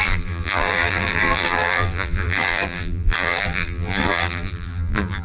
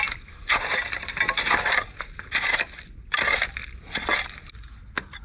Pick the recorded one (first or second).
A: second